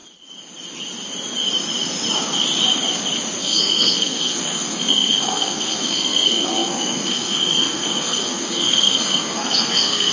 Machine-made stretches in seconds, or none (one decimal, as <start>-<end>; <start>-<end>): 3.4-10.1